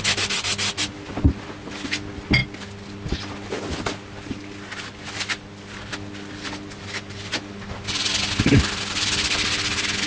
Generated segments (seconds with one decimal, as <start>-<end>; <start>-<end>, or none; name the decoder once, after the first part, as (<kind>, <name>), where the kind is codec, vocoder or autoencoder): none